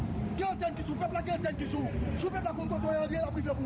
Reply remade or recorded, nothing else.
remade